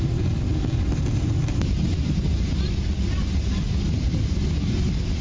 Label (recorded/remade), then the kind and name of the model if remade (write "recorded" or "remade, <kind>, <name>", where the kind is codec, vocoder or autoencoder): recorded